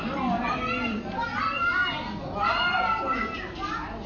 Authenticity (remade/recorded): recorded